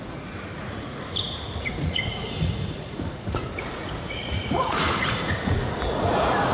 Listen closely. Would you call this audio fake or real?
fake